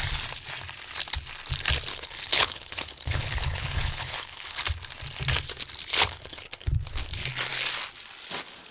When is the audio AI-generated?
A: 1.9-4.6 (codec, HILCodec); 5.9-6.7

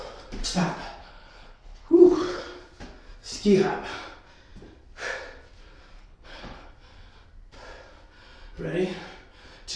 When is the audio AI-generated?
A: 1.0-2.4 (codec, HILCodec); 6.0-6.7

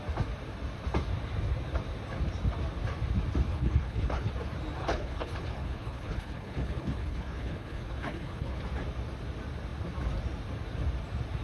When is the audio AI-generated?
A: 3.5-4.3 (codec, HILCodec); 4.8-8.6

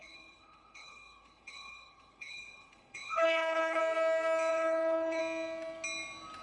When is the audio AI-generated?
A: 0.0-3.8 (codec, HILCodec); 4.5-5.2

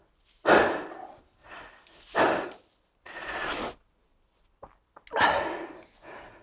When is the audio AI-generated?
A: none

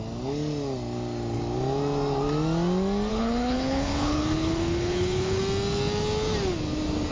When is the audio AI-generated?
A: 3.1-5.4 (codec, HILCodec)